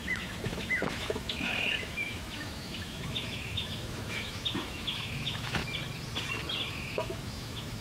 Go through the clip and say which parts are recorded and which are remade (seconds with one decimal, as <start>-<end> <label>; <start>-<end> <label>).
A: 0.0-5.6 remade; 5.6-6.7 recorded; 6.7-7.8 remade